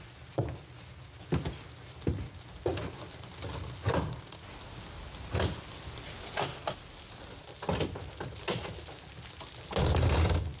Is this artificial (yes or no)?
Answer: no